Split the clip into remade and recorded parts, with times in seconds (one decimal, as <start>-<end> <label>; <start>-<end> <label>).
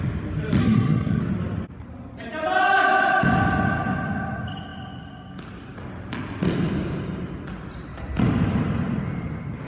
0.0-0.6 recorded; 0.6-1.2 remade; 1.2-9.7 recorded